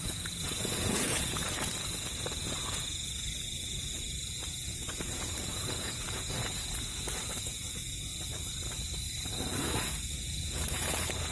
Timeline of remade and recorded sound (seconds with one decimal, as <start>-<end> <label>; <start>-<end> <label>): 0.0-8.1 remade; 8.1-9.3 recorded; 9.3-11.3 remade